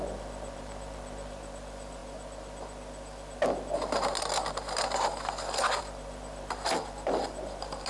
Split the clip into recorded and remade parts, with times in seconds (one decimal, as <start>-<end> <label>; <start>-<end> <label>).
0.0-2.0 remade; 2.0-5.8 recorded; 5.8-7.9 remade